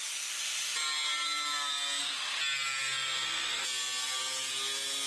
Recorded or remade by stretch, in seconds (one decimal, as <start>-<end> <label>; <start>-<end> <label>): 0.0-5.1 recorded